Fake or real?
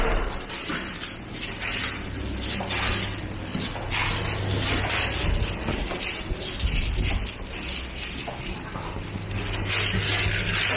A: real